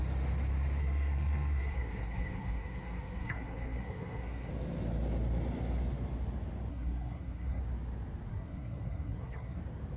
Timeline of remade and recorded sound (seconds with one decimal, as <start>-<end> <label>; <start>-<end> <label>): 0.0-0.8 recorded; 0.8-4.5 remade; 4.5-6.7 recorded; 6.7-7.6 remade; 7.6-8.3 recorded; 8.3-9.6 remade; 9.6-10.0 recorded